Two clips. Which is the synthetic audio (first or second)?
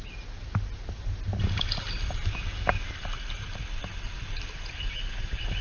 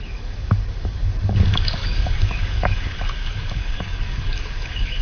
second